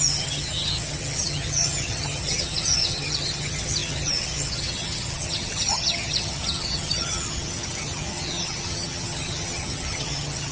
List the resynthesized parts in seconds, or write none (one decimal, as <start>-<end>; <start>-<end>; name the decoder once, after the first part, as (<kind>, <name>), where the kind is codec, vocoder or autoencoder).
0.0-10.5 (vocoder, HiFi-GAN)